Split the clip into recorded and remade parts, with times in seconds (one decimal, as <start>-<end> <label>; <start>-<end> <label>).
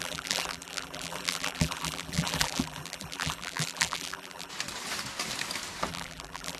0.0-4.5 remade; 4.5-5.9 recorded; 5.9-6.6 remade